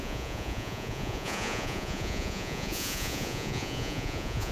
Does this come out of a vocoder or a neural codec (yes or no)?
yes